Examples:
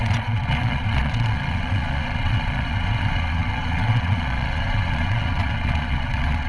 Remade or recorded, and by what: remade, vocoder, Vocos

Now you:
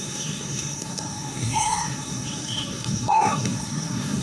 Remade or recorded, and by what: remade, codec, SNAC